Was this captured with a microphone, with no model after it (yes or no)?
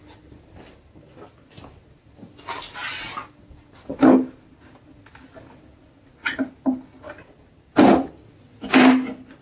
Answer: yes